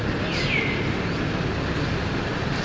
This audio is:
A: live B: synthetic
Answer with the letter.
A